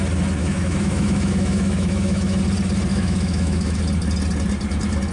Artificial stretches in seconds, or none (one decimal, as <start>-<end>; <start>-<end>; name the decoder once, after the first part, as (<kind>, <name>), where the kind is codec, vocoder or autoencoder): 0.4-2.4 (autoencoder, DAC-VAE); 2.9-3.8